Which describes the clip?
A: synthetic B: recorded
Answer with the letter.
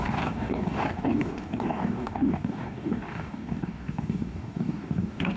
A